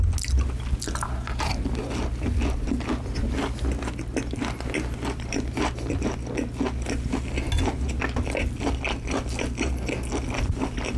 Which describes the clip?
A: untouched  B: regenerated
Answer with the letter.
A